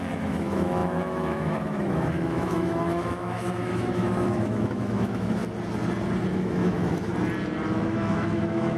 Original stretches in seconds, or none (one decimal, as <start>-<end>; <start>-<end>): 5.4-6.3; 7.1-7.7